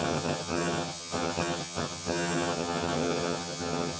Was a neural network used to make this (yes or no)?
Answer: yes